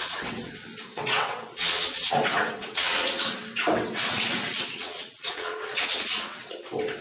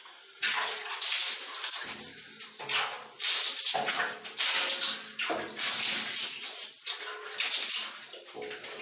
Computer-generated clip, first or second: first